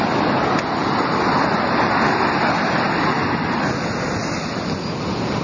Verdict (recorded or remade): recorded